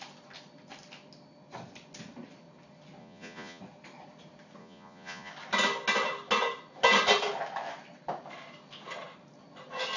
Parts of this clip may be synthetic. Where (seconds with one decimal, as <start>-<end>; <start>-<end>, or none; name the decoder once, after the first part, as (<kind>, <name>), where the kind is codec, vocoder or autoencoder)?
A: 3.0-3.6 (vocoder, Vocos); 4.6-5.3